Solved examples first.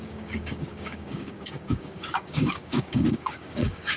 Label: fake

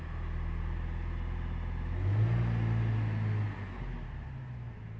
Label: real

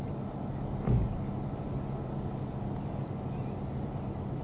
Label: real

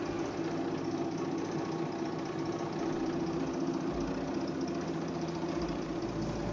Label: real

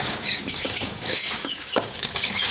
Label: fake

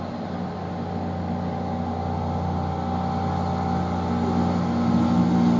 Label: real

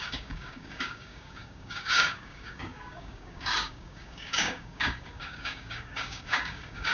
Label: fake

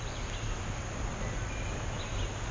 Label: real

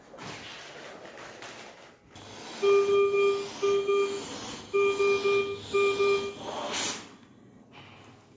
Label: real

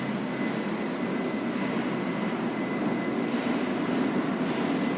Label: real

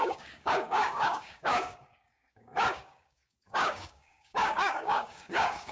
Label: fake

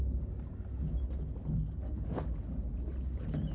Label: real